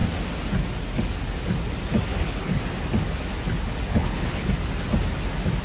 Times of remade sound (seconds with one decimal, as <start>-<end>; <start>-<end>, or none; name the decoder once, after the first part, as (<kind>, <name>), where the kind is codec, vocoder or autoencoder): 2.1-2.6 (codec, HILCodec); 3.9-4.5